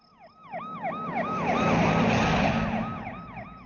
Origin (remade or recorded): recorded